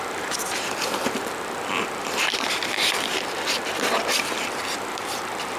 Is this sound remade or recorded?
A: remade